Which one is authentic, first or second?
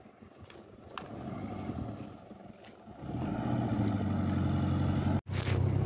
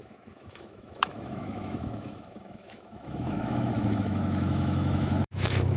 first